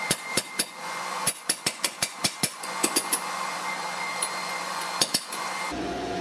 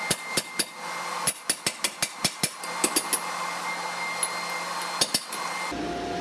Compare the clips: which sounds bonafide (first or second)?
second